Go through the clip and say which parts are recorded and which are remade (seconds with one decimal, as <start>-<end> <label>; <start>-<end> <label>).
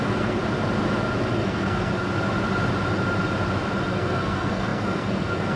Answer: 0.0-0.4 remade; 0.4-1.3 recorded; 1.3-1.9 remade; 1.9-3.9 recorded; 3.9-5.6 remade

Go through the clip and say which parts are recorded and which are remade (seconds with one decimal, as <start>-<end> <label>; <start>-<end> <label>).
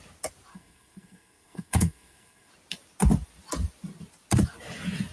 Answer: 0.0-0.5 recorded; 0.5-2.5 remade; 2.5-5.1 recorded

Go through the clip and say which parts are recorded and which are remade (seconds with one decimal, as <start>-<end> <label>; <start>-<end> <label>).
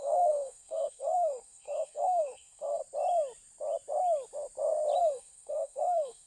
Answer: 0.0-2.8 remade; 2.8-5.0 recorded; 5.0-6.3 remade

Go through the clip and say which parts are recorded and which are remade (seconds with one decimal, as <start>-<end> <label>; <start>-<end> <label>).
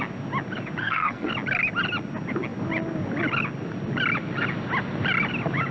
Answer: 0.0-0.8 recorded; 0.8-1.3 remade; 1.3-5.7 recorded